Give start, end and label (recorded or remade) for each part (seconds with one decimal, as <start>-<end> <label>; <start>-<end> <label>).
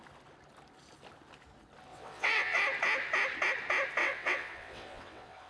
0.0-1.9 recorded; 1.9-2.6 remade; 2.6-4.0 recorded; 4.0-5.5 remade